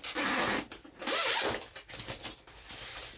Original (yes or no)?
yes